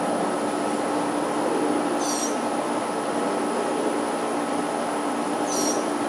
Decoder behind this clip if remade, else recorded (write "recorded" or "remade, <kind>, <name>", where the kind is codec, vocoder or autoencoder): recorded